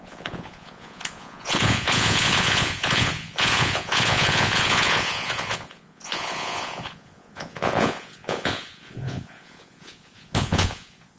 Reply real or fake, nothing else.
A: fake